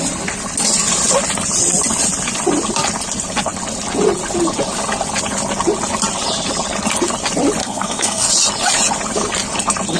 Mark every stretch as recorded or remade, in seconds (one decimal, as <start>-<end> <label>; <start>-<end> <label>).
0.0-7.6 recorded; 7.6-8.3 remade; 8.3-10.0 recorded